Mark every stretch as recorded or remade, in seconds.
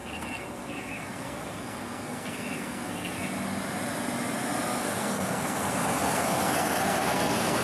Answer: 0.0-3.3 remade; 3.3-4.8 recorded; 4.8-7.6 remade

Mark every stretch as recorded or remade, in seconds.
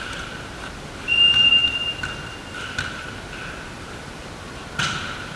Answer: 0.0-5.4 recorded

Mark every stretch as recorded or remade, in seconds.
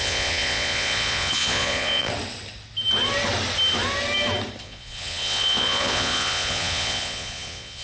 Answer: 0.0-2.1 remade; 2.1-4.6 recorded; 4.6-7.8 remade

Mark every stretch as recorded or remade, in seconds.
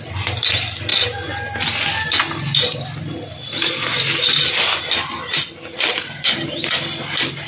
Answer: 0.0-5.9 recorded; 5.9-6.7 remade; 6.7-7.5 recorded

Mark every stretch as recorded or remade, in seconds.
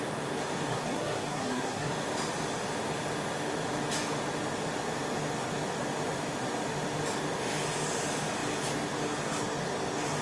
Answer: 0.0-0.7 recorded; 0.7-1.9 remade; 1.9-10.2 recorded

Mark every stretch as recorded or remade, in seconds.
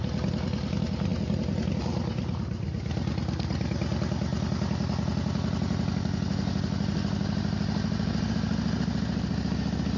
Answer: 0.0-10.0 recorded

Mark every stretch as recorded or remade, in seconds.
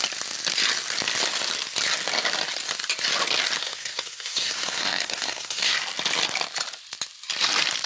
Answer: 0.0-3.6 recorded; 3.6-5.8 remade; 5.8-7.9 recorded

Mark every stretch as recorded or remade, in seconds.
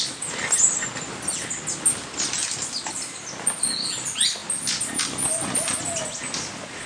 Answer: 0.0-6.9 recorded